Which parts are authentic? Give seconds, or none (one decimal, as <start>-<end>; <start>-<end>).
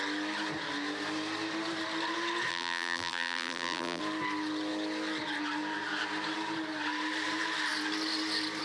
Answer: 0.0-2.5; 4.0-8.6